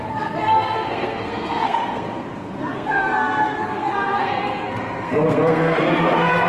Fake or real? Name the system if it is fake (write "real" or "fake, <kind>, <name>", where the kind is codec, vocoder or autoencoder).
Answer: fake, codec, SNAC